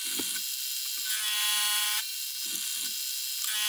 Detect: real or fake real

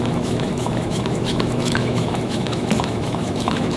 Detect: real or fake fake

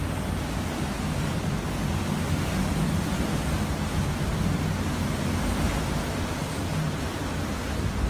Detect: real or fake real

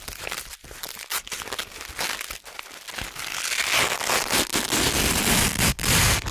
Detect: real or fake real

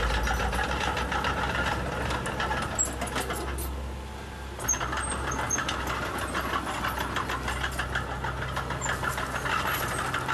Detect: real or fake real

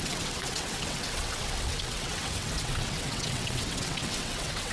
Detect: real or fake fake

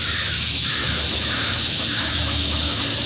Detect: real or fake fake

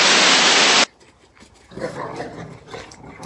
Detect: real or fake real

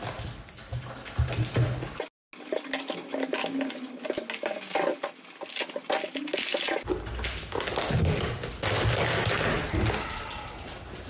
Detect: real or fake real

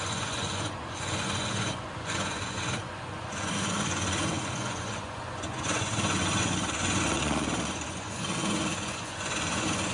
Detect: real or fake fake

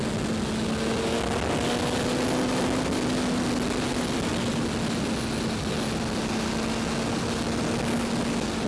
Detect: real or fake real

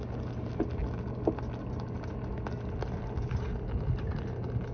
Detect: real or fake real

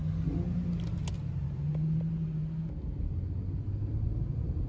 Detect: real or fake real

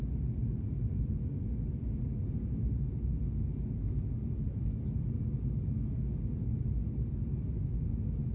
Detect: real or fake real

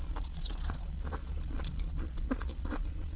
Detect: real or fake fake